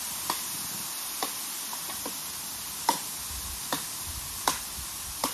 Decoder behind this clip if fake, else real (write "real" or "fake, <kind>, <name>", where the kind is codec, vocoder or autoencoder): real